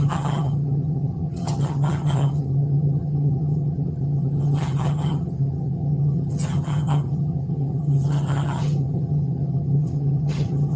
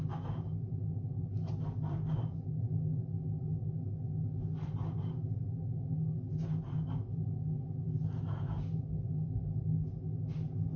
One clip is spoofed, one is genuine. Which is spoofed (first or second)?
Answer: first